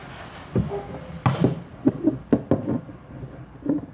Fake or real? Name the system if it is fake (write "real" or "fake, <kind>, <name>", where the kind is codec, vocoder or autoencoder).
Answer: real